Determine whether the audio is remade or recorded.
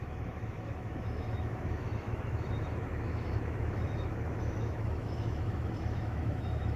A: remade